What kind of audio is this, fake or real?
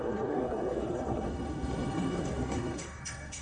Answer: fake